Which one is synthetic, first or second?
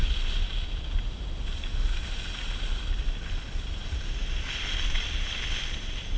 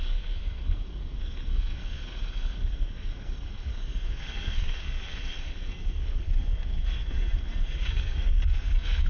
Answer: second